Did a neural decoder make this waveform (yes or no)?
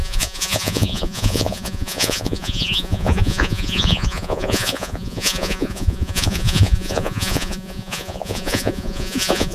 yes